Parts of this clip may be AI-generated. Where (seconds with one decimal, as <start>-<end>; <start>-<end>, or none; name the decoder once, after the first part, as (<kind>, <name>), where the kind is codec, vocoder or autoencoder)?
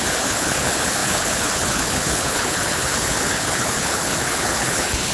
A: 0.0-5.1 (codec, HILCodec)